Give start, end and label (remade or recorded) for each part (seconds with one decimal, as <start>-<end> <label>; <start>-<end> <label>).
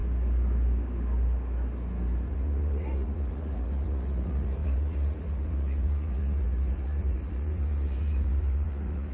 0.0-2.3 recorded; 2.3-9.1 remade